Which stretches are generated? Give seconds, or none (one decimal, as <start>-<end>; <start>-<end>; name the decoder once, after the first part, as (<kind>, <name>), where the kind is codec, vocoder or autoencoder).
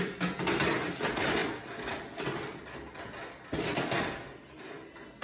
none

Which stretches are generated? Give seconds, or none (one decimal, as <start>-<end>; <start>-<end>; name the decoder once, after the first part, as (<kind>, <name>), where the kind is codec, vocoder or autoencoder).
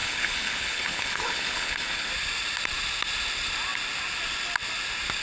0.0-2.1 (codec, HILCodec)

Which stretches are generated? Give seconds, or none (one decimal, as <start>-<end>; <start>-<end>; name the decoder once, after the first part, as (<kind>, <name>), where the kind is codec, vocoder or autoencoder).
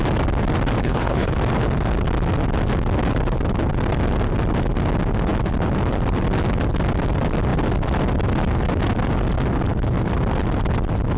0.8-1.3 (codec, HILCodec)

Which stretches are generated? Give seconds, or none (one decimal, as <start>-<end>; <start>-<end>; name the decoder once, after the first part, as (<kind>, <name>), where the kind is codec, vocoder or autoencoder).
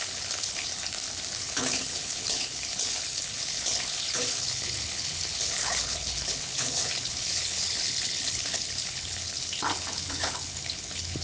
0.0-0.7 (codec, HILCodec); 1.4-11.2